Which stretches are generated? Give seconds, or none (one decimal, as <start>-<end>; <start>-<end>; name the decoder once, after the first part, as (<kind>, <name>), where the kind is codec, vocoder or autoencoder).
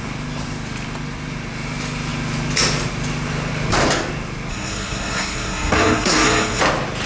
4.5-6.6 (codec, SNAC)